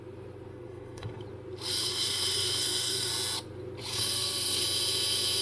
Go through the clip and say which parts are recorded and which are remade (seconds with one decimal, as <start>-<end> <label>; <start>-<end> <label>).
0.0-0.5 recorded; 0.5-1.2 remade; 1.2-1.8 recorded; 1.8-3.1 remade; 3.1-3.9 recorded; 3.9-4.6 remade; 4.6-5.4 recorded